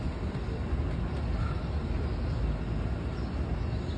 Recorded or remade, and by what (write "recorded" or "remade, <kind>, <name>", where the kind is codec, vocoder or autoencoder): recorded